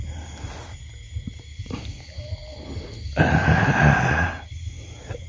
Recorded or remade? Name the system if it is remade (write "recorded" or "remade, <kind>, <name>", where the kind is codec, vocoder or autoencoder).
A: recorded